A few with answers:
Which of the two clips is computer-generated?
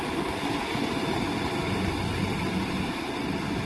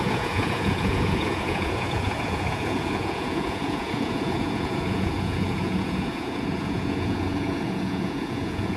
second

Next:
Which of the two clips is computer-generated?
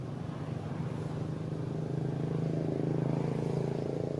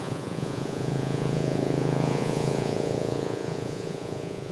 second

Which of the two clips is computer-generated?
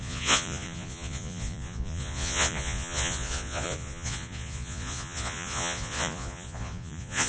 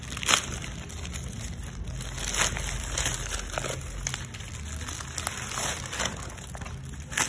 first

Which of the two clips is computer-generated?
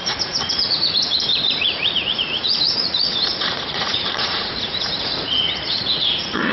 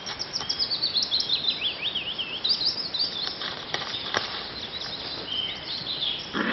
first